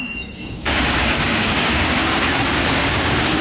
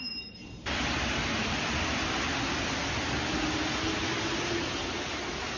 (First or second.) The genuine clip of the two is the second